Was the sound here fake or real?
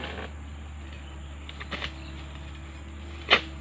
real